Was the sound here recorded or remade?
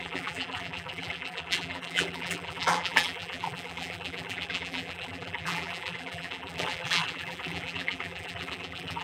remade